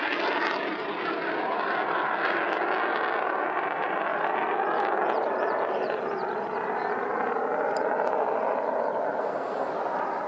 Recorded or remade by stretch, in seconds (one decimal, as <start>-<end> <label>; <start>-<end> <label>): 0.0-9.2 recorded; 9.2-9.7 remade; 9.7-10.3 recorded